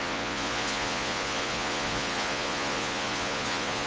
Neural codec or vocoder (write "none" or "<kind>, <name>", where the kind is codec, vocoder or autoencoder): vocoder, Vocos